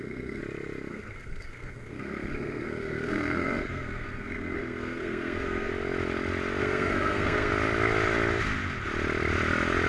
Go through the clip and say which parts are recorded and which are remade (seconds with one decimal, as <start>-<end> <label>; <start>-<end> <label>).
0.0-0.4 remade; 0.4-0.9 recorded; 0.9-5.7 remade; 5.7-6.6 recorded; 6.6-7.5 remade; 7.5-9.9 recorded